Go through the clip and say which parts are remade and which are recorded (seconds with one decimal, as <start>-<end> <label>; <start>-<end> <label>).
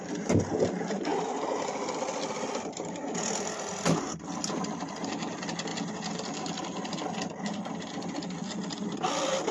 0.0-9.5 recorded